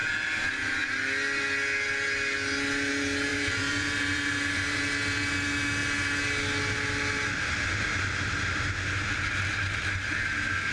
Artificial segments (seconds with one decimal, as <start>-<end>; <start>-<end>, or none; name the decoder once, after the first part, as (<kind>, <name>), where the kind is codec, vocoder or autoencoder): 3.3-4.8 (vocoder, BigVGAN v2)